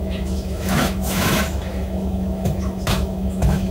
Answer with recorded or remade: remade